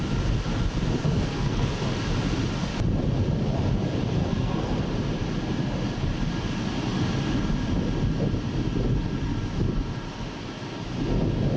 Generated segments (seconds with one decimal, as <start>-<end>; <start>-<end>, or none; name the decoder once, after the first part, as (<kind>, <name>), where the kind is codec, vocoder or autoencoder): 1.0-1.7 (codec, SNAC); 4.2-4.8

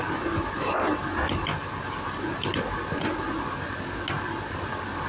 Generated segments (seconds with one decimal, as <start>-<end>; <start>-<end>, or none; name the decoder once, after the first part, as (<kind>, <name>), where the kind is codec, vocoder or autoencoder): none

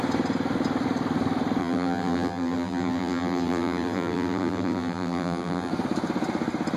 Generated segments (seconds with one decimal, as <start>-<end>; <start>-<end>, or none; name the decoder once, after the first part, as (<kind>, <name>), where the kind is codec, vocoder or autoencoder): 1.6-5.7 (vocoder, BigVGAN v2)

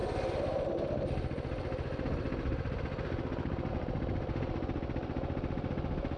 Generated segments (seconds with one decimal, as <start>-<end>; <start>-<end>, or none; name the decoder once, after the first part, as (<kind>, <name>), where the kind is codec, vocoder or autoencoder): none

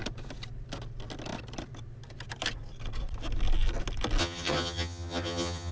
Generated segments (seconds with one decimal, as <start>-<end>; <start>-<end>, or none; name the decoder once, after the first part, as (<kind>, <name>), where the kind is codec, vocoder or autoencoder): 4.2-5.7 (vocoder, HiFi-GAN)

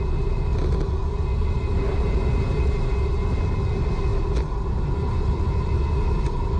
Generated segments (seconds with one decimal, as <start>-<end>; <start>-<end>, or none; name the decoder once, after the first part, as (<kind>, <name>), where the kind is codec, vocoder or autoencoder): none

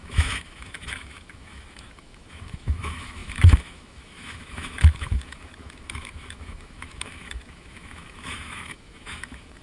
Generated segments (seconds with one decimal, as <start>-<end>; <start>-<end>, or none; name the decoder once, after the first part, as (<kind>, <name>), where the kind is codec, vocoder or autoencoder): 0.0-9.6 (autoencoder, DAC-VAE)